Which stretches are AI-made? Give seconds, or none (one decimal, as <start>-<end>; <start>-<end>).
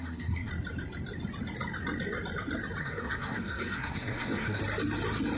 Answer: 0.0-0.5; 2.8-4.6